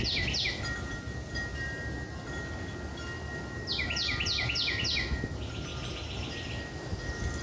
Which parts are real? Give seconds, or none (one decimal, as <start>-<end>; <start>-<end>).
0.0-7.4